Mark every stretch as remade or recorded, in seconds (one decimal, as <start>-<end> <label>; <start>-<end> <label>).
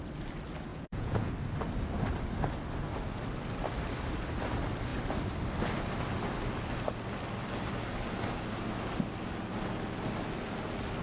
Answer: 0.0-0.7 recorded; 0.7-1.3 remade; 1.3-11.0 recorded